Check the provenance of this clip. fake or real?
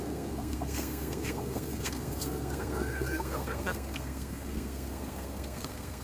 fake